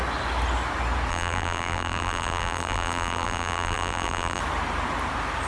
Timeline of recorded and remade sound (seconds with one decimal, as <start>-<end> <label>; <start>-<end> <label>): 0.0-1.1 recorded; 1.1-4.4 remade; 4.4-5.5 recorded